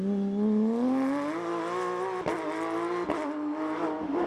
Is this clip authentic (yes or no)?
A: yes